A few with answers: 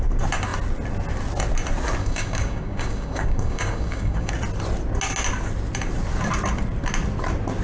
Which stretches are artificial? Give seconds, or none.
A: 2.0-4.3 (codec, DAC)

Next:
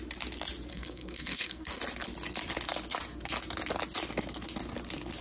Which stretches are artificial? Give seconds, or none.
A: 0.7-1.8 (codec, SNAC)

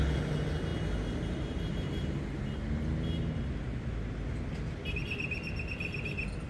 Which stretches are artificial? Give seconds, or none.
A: none

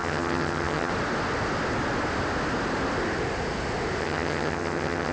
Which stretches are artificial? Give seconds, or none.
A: 0.0-0.9 (vocoder, HiFi-GAN); 4.0-5.1

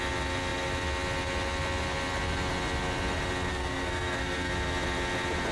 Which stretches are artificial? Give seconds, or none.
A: 3.5-4.5 (codec, SNAC)